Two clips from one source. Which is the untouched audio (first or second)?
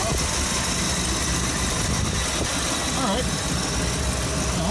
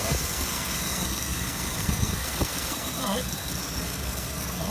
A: first